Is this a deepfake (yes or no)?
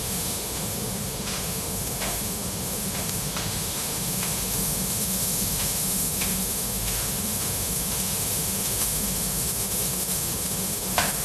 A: yes